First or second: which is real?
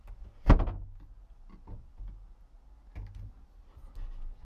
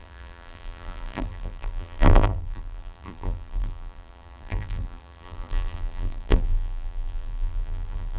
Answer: first